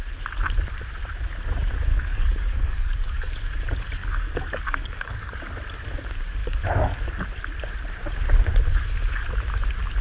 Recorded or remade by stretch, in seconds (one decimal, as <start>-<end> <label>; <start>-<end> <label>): 0.0-1.9 recorded; 1.9-3.3 remade; 3.3-4.0 recorded; 4.0-5.4 remade; 5.4-6.4 recorded; 6.4-7.0 remade; 7.0-10.0 recorded